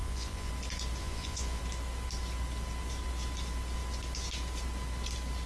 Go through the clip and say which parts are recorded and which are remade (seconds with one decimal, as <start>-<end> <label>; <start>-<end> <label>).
0.0-0.5 remade; 0.5-1.0 recorded; 1.0-1.6 remade; 1.6-5.5 recorded